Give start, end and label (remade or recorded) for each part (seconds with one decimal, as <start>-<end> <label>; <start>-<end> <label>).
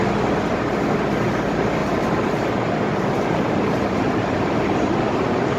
0.0-1.8 recorded; 1.8-5.6 remade